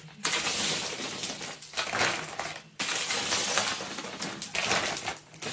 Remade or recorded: recorded